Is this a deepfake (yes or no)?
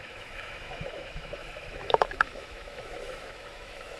yes